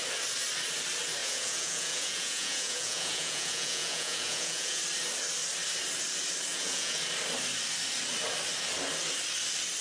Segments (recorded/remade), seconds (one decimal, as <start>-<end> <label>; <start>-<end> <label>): 0.0-1.2 recorded; 1.2-4.8 remade; 4.8-6.5 recorded; 6.5-7.0 remade; 7.0-9.8 recorded